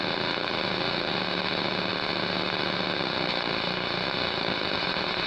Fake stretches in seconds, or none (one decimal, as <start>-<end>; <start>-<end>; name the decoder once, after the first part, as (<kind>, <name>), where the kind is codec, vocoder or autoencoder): none